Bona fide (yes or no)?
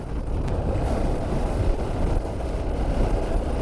yes